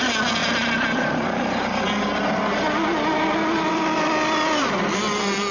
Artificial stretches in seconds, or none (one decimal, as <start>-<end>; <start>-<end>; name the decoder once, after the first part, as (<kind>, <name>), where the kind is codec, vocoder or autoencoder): none